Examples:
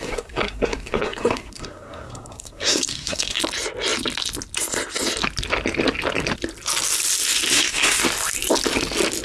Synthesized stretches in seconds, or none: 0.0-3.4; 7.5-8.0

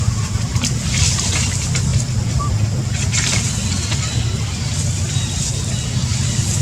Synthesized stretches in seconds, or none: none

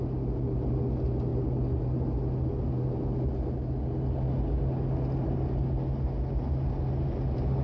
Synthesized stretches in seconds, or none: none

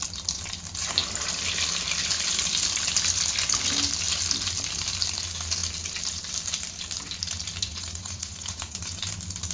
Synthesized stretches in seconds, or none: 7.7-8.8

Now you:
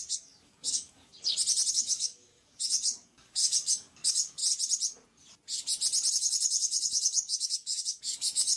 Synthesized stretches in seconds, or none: 0.0-1.1; 1.7-4.4; 6.1-8.6